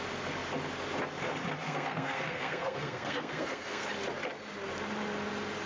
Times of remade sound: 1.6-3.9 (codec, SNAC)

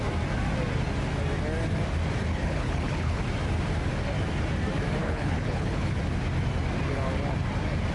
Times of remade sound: 2.3-3.2 (codec, HILCodec); 5.0-6.0

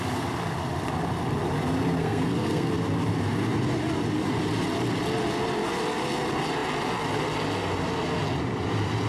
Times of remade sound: 2.0-2.7 (codec, SNAC)

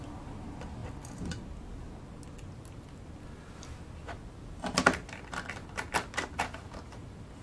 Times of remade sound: none

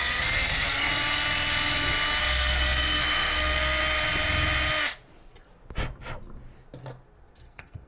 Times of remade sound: 0.0-0.9 (codec, SNAC); 2.2-3.8; 7.4-7.9

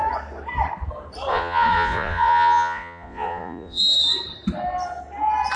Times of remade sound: 1.3-3.8 (vocoder, Vocos)

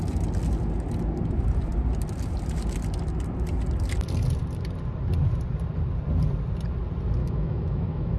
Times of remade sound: 7.2-8.2 (autoencoder, DAC-VAE)